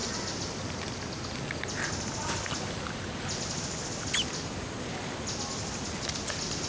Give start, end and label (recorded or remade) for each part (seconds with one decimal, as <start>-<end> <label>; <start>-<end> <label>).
0.0-6.7 recorded